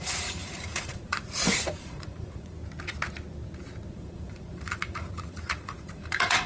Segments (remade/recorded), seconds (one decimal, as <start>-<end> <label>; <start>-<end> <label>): 0.0-2.6 remade; 2.6-3.9 recorded; 3.9-6.5 remade